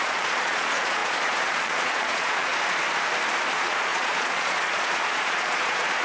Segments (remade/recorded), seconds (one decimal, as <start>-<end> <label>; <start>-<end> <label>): 0.0-2.5 remade; 2.5-3.5 recorded; 3.5-6.0 remade